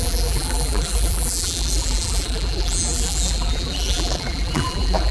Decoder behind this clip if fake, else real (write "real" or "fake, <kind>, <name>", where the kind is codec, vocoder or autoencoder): fake, vocoder, BigVGAN v2